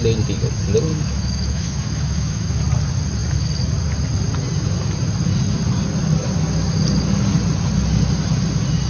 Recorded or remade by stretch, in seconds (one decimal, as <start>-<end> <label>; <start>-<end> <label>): 0.0-0.9 recorded; 0.9-2.6 remade; 2.6-8.9 recorded